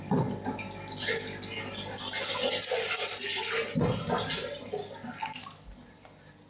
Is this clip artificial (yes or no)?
no